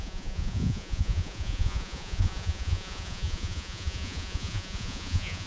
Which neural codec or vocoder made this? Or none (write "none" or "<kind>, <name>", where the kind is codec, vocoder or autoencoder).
vocoder, Vocos